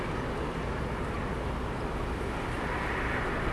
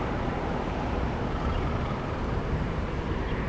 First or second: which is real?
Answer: first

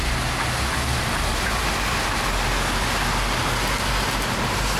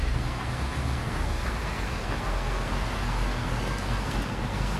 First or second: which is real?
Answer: first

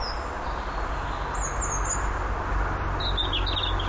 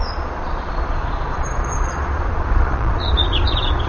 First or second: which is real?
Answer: first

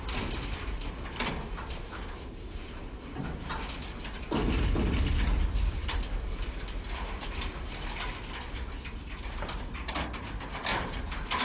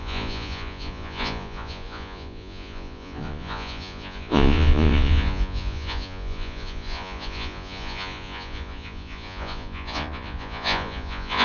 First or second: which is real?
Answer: first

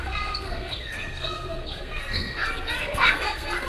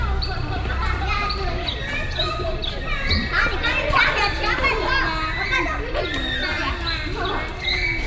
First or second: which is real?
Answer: second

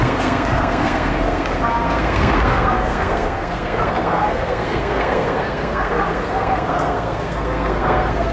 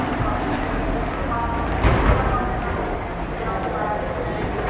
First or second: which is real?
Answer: second